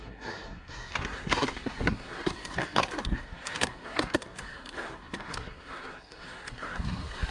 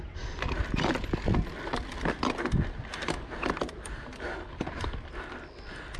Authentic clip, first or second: second